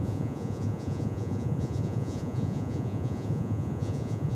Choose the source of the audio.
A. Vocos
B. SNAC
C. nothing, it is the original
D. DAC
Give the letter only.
A